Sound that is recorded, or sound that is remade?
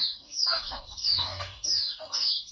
remade